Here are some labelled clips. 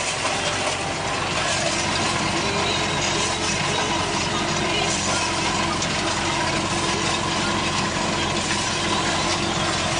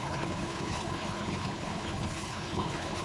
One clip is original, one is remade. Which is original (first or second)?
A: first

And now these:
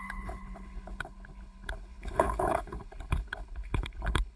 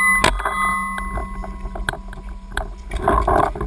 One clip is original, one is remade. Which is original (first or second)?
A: second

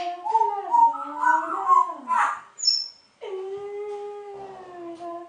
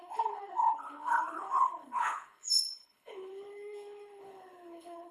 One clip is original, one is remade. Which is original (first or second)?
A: first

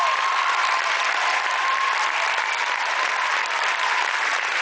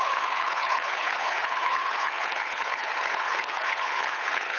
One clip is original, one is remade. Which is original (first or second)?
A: first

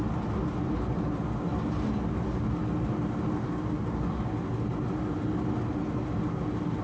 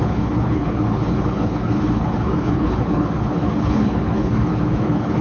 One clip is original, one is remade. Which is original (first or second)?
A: first